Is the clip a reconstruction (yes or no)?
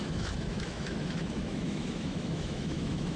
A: yes